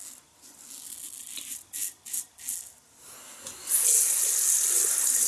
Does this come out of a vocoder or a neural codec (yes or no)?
no